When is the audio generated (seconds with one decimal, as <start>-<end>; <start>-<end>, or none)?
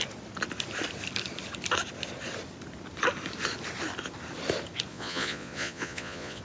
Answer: 4.9-6.4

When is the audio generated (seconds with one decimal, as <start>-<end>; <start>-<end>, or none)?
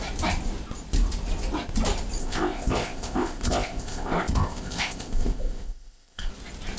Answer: 2.2-6.3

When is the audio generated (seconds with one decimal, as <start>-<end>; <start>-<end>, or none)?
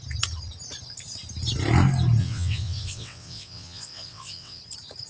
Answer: 2.2-4.6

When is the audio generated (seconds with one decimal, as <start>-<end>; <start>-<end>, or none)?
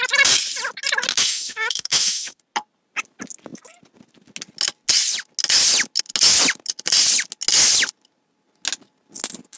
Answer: 1.1-2.4